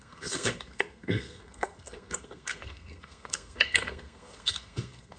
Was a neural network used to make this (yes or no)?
yes